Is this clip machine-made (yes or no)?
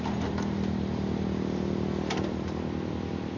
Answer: no